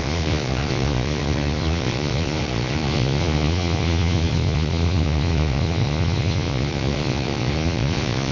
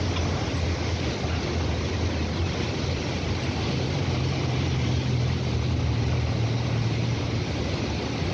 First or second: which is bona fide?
second